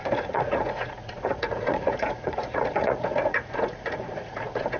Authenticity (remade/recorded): remade